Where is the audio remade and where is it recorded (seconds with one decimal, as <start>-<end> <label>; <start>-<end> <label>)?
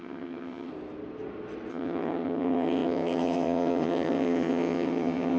0.0-0.7 remade; 0.7-1.7 recorded; 1.7-5.4 remade